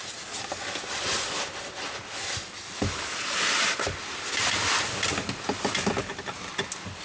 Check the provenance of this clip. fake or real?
real